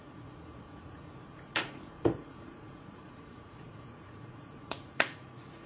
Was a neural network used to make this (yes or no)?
yes